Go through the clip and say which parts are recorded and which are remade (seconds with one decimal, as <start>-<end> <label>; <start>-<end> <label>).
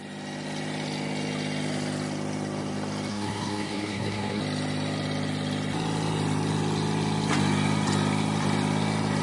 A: 0.0-3.1 recorded; 3.1-4.4 remade; 4.4-9.2 recorded